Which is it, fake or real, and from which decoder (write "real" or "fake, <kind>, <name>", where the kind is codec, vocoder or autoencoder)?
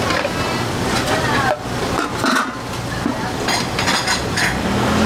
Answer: real